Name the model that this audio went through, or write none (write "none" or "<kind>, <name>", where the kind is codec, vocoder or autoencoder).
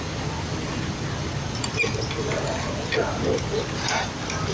none